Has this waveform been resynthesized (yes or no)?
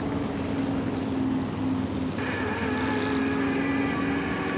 no